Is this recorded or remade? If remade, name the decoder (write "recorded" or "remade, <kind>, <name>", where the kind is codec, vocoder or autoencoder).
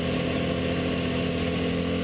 recorded